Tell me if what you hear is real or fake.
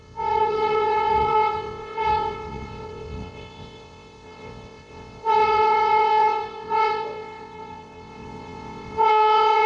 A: fake